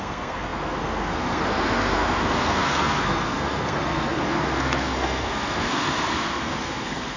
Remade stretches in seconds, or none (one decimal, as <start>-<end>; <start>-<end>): 0.0-7.2